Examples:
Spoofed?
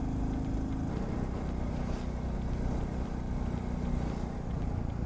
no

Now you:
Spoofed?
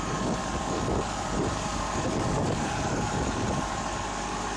yes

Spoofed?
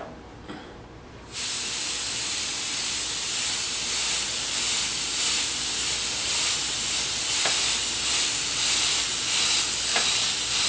no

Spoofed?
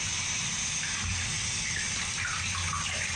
no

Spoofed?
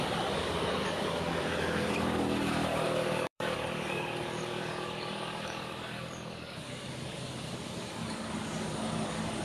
yes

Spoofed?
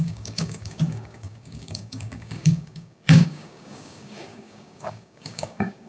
yes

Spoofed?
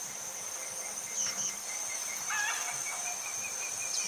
no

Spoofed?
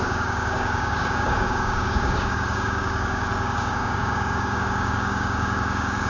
yes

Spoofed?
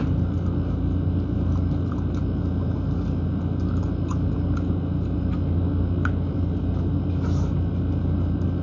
no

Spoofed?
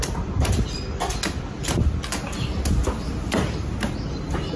no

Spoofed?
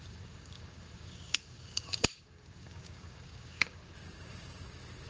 yes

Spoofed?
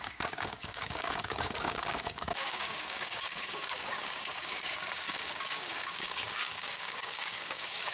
yes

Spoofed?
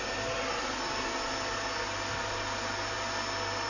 no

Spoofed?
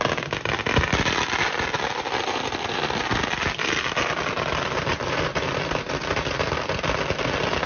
no